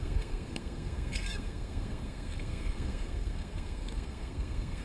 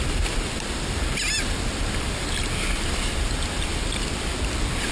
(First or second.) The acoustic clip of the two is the second